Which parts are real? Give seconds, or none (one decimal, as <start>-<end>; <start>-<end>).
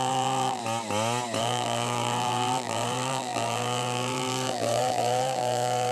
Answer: 0.6-1.4